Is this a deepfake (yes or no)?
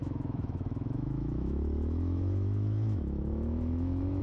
yes